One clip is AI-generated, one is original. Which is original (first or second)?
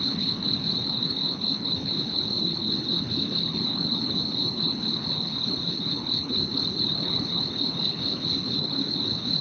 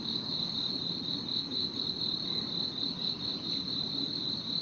second